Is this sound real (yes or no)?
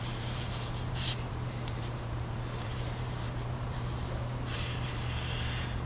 no